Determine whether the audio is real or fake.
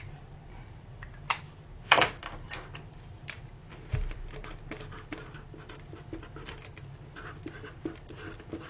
real